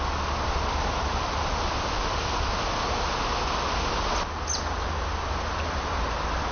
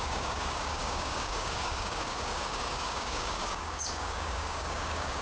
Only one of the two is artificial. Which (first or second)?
second